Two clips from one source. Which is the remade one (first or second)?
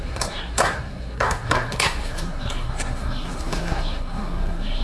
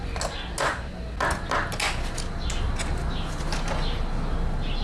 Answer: first